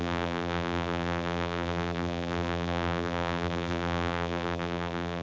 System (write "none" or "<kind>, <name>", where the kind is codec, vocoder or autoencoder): vocoder, BigVGAN v2